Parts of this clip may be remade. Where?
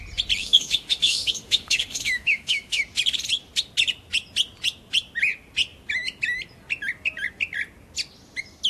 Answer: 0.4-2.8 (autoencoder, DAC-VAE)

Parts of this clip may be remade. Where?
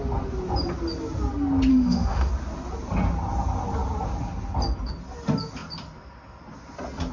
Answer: 1.7-2.3 (autoencoder, DAC-VAE)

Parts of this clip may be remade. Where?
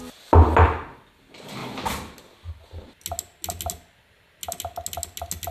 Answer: none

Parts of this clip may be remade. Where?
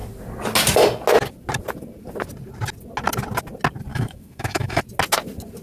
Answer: 3.9-4.8 (autoencoder, DAC-VAE)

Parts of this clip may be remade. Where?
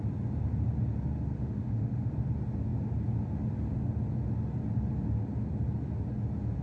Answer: 1.4-2.1 (autoencoder, DAC-VAE)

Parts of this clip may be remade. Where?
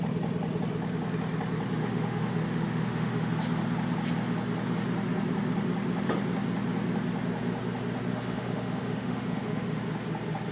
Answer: 1.8-3.3 (autoencoder, DAC-VAE); 8.1-9.8